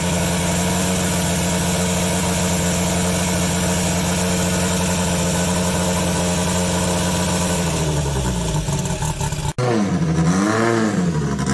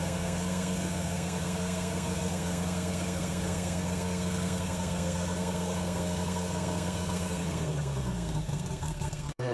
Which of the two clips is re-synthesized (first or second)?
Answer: second